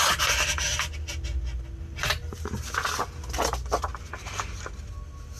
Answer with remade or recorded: recorded